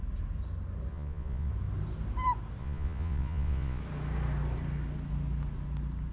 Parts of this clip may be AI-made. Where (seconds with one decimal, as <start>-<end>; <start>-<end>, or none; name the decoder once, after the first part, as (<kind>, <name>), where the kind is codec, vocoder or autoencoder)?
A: 0.9-1.5 (vocoder, Vocos); 2.6-3.8